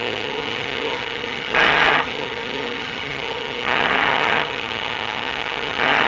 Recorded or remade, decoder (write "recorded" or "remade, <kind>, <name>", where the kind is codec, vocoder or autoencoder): remade, vocoder, HiFi-GAN